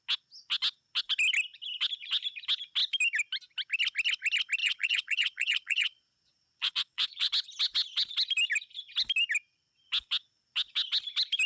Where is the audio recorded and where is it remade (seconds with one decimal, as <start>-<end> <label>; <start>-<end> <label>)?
0.0-4.6 recorded; 4.6-7.3 remade; 7.3-11.5 recorded